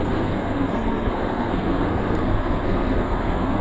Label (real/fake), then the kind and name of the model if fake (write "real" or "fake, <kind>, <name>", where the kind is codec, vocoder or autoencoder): fake, codec, SNAC